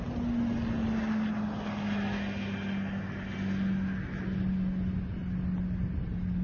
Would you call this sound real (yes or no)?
yes